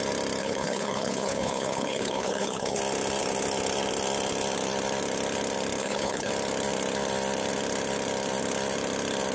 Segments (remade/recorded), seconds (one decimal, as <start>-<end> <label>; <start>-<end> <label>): 0.0-0.4 recorded; 0.4-2.8 remade; 2.8-5.8 recorded; 5.8-6.3 remade; 6.3-9.3 recorded